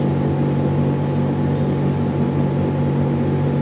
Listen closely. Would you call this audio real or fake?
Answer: real